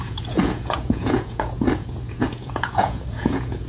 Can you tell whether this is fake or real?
fake